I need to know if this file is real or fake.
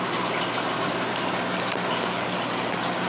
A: real